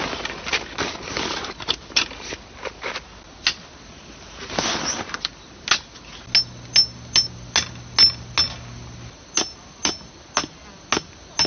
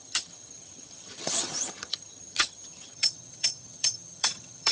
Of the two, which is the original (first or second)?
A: first